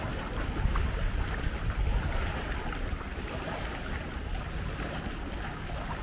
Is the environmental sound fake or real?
real